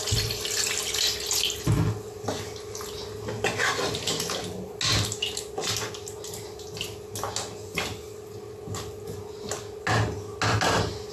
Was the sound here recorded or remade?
recorded